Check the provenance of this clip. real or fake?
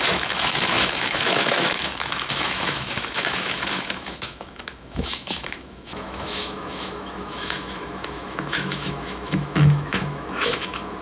fake